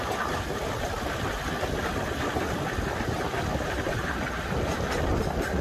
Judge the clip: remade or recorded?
recorded